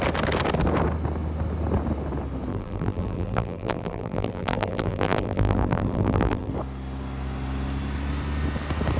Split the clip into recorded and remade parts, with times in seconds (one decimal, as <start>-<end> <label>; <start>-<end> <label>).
0.0-2.5 recorded; 2.5-6.5 remade; 6.5-9.0 recorded